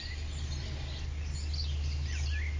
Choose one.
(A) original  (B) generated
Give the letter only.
A